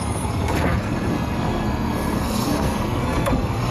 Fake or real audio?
fake